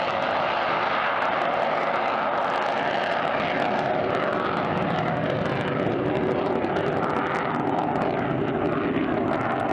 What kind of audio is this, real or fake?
real